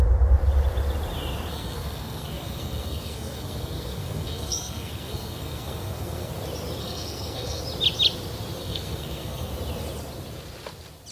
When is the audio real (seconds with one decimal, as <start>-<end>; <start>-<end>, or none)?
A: 0.0-1.5; 6.3-6.8; 7.6-8.6; 9.5-11.1